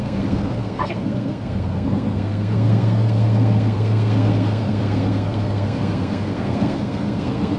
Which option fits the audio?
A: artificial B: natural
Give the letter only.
A